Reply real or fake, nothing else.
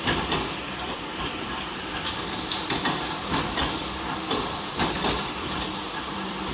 fake